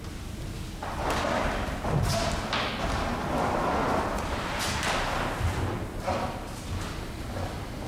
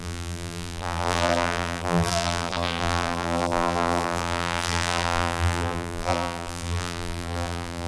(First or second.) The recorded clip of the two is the first